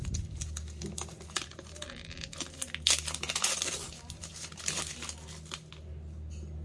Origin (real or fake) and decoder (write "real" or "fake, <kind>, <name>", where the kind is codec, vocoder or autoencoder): real